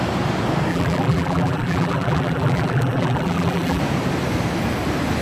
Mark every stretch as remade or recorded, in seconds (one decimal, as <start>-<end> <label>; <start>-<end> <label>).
0.0-0.7 recorded; 0.7-3.8 remade; 3.8-5.2 recorded